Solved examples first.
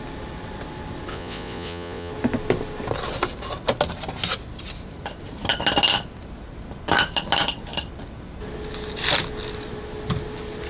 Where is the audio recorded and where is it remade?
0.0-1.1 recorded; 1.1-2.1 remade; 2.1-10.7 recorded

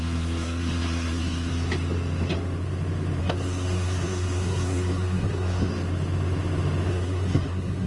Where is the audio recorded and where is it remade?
0.0-1.5 remade; 1.5-3.2 recorded; 3.2-5.7 remade; 5.7-6.9 recorded; 6.9-7.9 remade

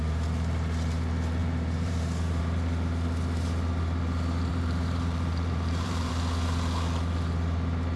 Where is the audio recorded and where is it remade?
0.0-1.4 recorded; 1.4-2.4 remade; 2.4-4.5 recorded; 4.5-6.1 remade; 6.1-8.0 recorded